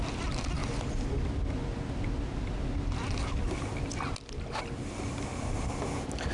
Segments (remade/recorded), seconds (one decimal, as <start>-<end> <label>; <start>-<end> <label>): 0.0-6.3 recorded